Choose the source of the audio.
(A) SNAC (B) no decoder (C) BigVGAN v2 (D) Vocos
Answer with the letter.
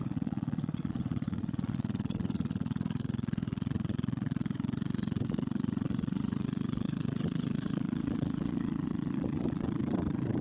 D